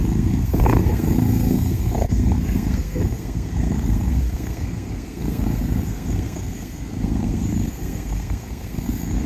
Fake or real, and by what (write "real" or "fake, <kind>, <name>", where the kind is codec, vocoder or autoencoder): fake, codec, SNAC